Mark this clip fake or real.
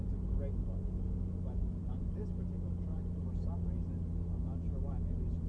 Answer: real